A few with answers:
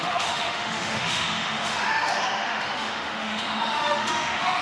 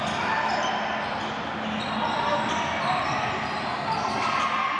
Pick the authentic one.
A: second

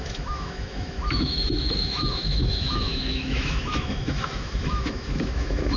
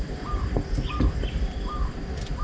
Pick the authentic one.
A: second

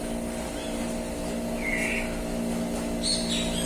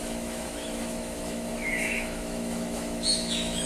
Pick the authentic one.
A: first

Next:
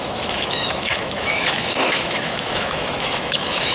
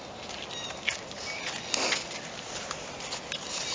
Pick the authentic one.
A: second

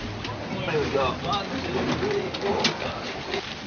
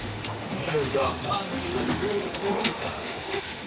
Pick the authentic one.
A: first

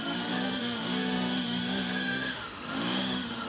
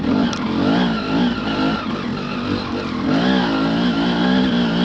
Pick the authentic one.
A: second